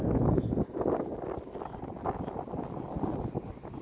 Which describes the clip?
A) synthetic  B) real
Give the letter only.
B